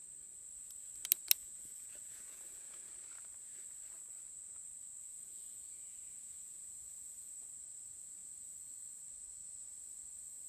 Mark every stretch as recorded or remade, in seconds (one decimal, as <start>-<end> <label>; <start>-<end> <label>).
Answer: 0.0-1.4 recorded; 1.4-2.9 remade; 2.9-5.0 recorded; 5.0-7.3 remade; 7.3-10.5 recorded